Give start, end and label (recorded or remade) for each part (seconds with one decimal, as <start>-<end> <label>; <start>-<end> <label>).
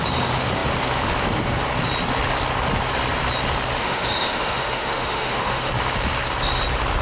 0.0-3.8 recorded; 3.8-5.7 remade; 5.7-7.0 recorded